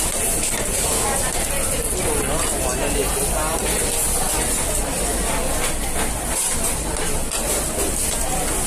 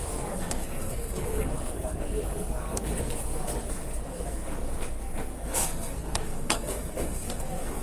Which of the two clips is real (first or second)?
first